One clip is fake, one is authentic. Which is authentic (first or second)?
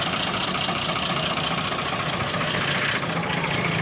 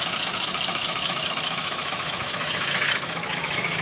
first